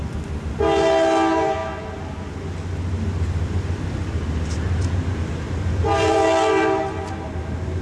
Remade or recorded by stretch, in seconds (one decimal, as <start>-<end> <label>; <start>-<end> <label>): 0.0-7.8 recorded